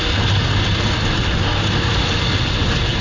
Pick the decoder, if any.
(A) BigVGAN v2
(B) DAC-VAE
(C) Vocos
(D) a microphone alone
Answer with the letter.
D